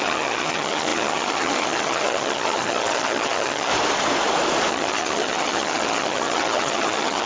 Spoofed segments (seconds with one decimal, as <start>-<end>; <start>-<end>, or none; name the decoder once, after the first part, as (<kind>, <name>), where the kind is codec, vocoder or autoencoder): 0.0-3.7 (vocoder, HiFi-GAN); 4.7-7.3